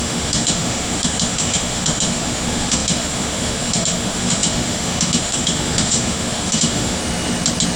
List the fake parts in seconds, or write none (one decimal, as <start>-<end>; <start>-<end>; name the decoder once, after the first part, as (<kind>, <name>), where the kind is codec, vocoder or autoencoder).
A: 0.0-7.0 (autoencoder, DAC-VAE)